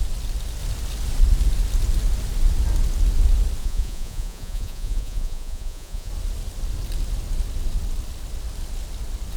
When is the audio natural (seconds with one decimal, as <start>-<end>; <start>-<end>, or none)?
0.0-3.6; 6.1-9.4